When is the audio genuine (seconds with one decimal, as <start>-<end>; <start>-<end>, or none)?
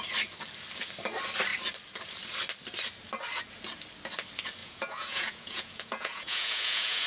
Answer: 0.0-4.6